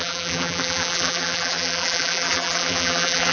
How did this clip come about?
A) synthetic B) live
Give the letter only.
A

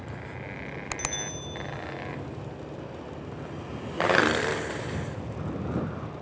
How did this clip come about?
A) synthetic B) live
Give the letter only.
B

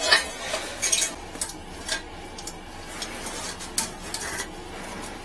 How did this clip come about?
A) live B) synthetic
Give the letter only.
A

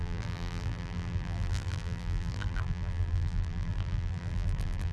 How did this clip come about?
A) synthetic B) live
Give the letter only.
A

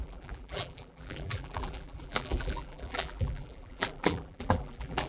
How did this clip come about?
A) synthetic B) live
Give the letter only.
A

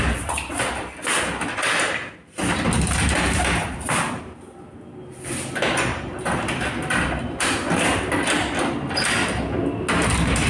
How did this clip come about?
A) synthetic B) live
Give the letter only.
B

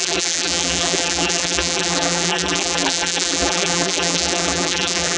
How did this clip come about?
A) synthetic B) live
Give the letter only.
A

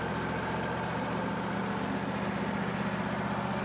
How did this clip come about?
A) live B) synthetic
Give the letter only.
A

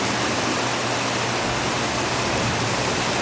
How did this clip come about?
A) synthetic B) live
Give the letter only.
B